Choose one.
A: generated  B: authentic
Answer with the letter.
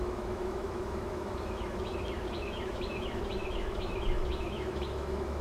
A